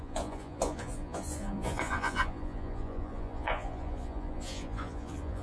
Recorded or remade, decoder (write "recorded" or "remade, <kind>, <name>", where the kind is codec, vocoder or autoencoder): remade, vocoder, Vocos